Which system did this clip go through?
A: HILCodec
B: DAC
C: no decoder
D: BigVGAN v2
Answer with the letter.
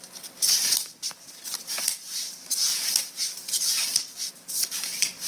C